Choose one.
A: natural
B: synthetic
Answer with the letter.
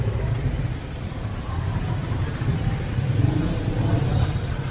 B